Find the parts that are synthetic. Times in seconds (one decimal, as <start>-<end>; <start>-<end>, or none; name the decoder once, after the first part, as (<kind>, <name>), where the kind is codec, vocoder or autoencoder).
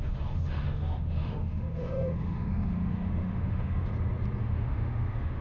0.0-3.9 (autoencoder, DAC-VAE); 4.4-5.4